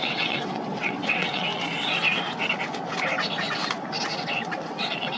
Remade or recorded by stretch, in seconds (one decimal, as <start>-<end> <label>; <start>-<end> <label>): 0.0-1.5 remade; 1.5-4.6 recorded; 4.6-5.2 remade